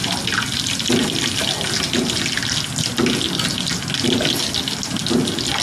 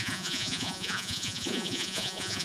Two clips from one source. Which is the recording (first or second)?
first